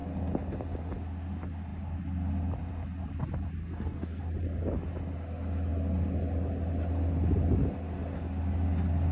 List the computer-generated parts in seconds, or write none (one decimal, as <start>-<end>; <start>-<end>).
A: 3.6-4.2